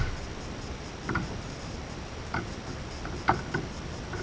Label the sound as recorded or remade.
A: recorded